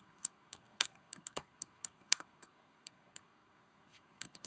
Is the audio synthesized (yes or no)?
yes